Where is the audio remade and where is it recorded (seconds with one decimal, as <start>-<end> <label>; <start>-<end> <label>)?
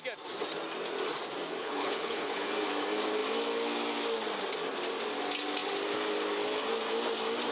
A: 0.0-1.6 recorded; 1.6-2.5 remade; 2.5-7.5 recorded